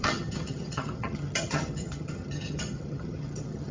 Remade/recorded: remade